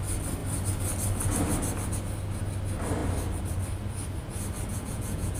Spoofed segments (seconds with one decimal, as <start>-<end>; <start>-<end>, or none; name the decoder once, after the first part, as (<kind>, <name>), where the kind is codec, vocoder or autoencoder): 4.7-5.4 (vocoder, Vocos)